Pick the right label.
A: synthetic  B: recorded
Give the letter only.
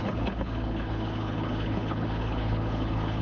A